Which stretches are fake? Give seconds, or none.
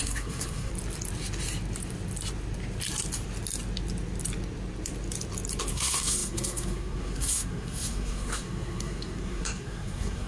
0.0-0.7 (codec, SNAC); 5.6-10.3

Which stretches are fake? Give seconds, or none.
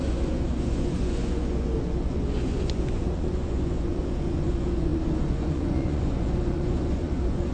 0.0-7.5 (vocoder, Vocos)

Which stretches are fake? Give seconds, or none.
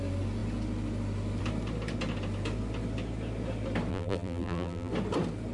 3.9-4.9 (vocoder, BigVGAN v2)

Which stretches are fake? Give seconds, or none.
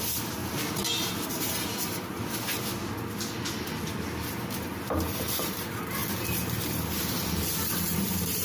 0.0-0.4 (vocoder, BigVGAN v2); 1.3-2.1; 4.3-8.4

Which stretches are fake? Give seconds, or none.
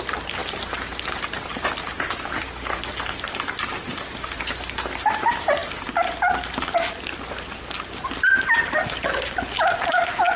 none